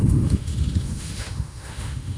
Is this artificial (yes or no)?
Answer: yes